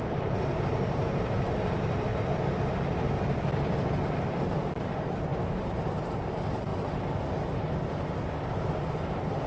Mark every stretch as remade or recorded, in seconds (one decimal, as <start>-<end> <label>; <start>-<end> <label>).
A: 0.0-2.1 remade; 2.1-4.3 recorded; 4.3-5.3 remade; 5.3-6.0 recorded; 6.0-6.7 remade; 6.7-8.5 recorded; 8.5-9.5 remade